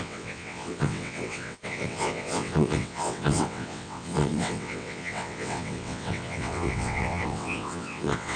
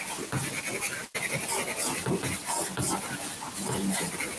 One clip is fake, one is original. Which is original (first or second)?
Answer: second